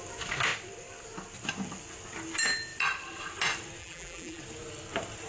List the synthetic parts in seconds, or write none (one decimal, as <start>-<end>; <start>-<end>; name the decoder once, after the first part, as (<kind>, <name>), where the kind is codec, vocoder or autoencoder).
3.8-4.4 (vocoder, BigVGAN v2)